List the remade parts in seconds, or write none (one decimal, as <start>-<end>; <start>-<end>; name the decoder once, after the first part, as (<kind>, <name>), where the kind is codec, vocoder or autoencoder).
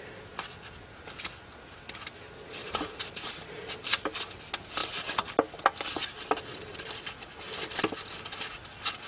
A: 2.6-3.7 (vocoder, BigVGAN v2)